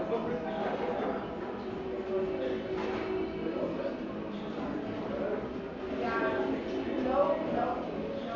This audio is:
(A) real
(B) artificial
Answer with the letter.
A